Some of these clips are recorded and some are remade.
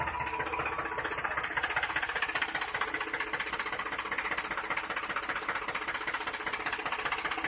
recorded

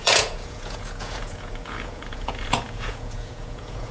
remade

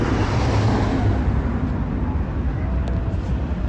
recorded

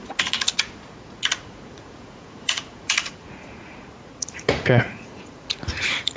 remade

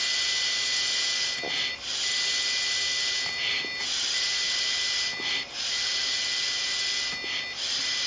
recorded